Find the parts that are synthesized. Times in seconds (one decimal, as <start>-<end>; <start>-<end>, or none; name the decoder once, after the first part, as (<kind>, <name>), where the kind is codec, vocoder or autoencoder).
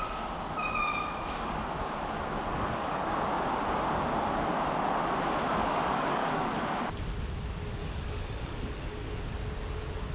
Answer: 2.5-3.1 (codec, DAC); 5.6-6.6; 7.8-9.2